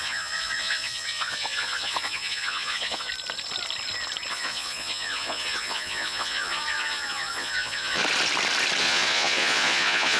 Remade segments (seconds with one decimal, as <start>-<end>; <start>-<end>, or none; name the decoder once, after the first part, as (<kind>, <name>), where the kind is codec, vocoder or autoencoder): 0.0-3.1 (vocoder, Vocos); 4.3-8.0; 8.8-10.2